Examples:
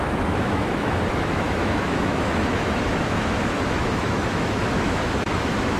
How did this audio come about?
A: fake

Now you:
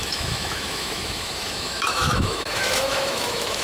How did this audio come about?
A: fake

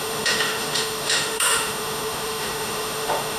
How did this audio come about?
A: fake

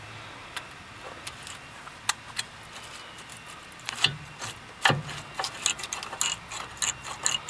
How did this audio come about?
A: real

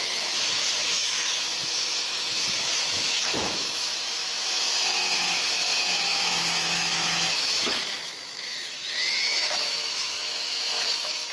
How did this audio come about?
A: fake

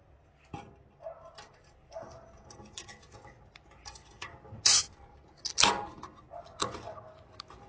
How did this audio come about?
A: real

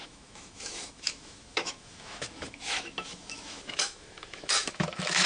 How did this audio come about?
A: fake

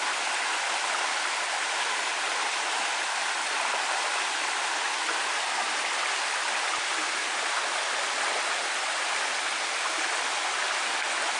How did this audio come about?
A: real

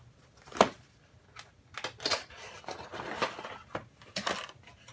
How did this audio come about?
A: real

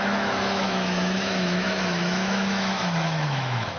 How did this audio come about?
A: fake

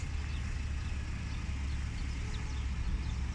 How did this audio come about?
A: real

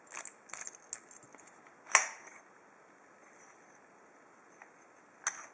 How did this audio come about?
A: real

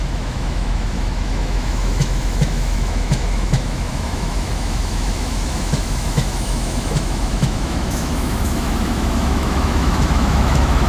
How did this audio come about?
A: fake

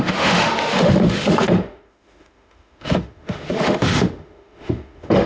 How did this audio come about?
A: fake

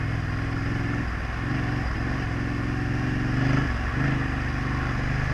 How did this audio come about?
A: real